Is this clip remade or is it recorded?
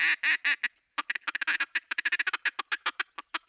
recorded